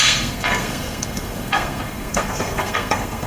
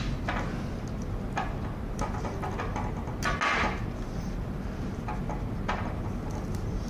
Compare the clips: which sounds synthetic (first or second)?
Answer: first